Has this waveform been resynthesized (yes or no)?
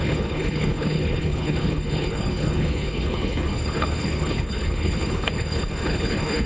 yes